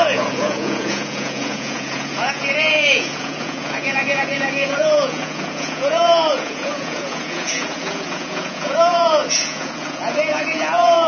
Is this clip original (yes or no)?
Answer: no